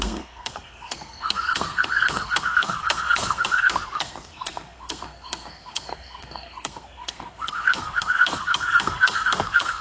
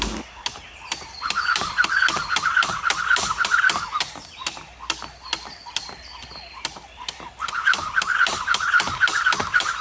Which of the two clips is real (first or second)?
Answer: second